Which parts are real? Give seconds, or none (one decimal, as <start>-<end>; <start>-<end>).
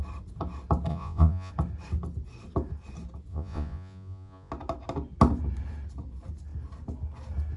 0.0-0.9; 1.5-3.3; 4.5-7.6